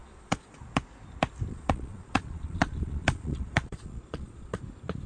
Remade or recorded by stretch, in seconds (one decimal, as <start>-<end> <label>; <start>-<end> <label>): 0.0-0.6 remade; 0.6-1.5 recorded; 1.5-4.6 remade; 4.6-5.1 recorded